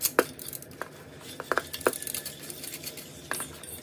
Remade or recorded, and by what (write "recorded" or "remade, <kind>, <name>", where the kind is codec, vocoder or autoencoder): recorded